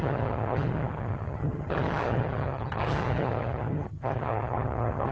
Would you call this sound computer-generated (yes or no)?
yes